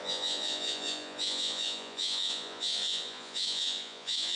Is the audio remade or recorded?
remade